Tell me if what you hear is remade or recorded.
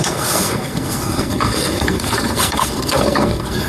remade